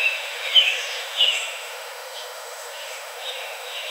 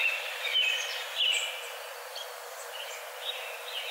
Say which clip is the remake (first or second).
first